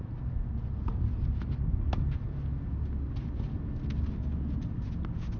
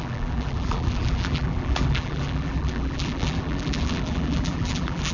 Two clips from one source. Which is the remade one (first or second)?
second